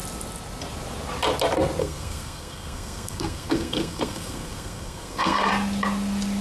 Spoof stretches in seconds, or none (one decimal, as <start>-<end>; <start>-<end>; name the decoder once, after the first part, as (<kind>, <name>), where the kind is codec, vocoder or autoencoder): 1.8-5.5 (codec, SNAC)